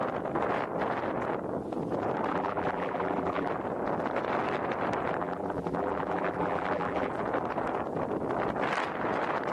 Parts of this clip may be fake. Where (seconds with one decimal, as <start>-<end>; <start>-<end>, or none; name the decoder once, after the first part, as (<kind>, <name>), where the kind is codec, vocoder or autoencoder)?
2.3-3.5 (vocoder, BigVGAN v2); 5.2-7.1